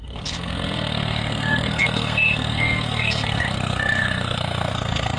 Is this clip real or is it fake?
fake